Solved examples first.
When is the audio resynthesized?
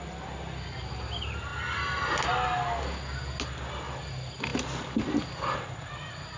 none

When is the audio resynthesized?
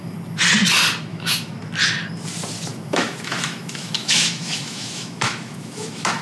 1.1-1.6 (autoencoder, DAC-VAE); 2.7-6.2